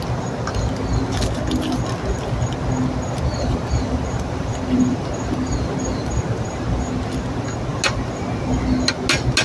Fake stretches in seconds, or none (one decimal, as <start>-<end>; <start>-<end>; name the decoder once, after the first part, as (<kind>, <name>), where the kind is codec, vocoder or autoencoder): 3.3-6.9 (vocoder, BigVGAN v2)